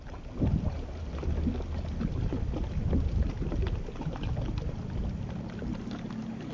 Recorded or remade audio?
recorded